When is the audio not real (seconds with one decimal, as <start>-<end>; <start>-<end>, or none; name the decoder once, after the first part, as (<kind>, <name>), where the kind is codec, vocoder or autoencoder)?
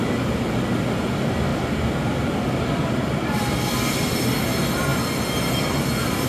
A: none